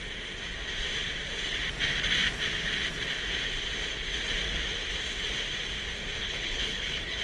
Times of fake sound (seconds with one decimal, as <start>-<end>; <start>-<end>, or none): 6.2-7.2